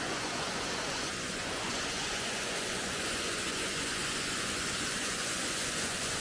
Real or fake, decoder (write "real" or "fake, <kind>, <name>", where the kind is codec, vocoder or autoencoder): fake, vocoder, Vocos